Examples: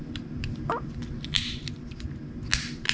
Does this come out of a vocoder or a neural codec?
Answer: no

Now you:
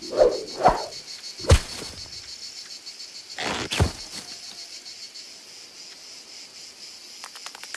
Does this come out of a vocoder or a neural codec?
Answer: no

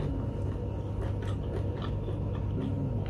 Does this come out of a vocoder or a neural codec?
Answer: no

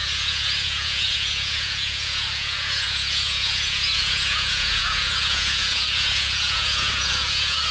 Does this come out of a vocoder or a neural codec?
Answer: yes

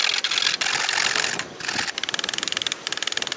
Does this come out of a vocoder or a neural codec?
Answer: no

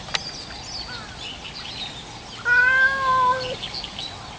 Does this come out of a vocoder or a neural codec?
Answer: no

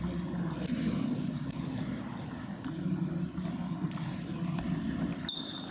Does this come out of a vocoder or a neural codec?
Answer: no